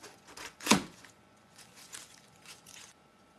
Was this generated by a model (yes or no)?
yes